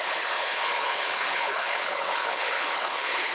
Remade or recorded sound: remade